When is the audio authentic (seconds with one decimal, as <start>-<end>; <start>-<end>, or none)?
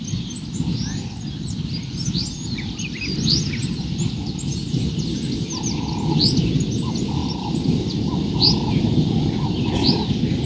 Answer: 0.0-10.5